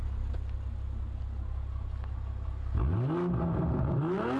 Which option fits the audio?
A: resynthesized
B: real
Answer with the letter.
B